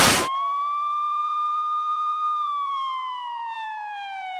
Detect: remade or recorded remade